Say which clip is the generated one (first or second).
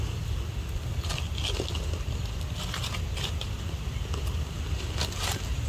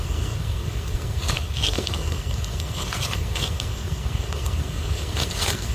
second